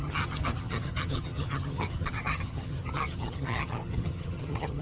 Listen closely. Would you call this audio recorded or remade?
remade